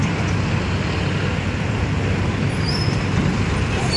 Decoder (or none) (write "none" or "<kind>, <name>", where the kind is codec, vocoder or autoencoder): vocoder, BigVGAN v2